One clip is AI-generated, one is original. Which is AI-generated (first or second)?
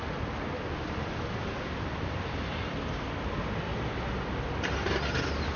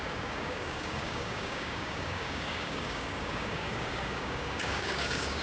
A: second